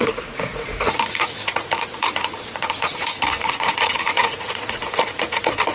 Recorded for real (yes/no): no